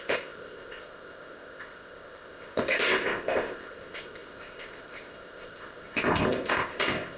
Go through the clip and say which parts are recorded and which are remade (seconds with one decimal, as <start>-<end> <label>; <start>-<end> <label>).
0.0-7.2 remade